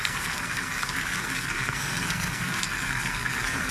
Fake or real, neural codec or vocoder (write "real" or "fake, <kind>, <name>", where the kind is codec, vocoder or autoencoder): fake, codec, SNAC